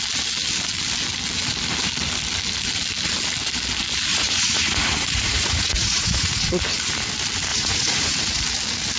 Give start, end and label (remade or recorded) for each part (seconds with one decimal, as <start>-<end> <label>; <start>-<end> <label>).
0.0-4.1 recorded; 4.1-6.5 remade; 6.5-7.5 recorded; 7.5-8.4 remade; 8.4-9.0 recorded